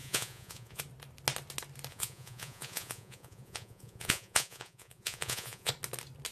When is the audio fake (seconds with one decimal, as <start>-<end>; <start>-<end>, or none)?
0.0-0.8; 1.9-5.7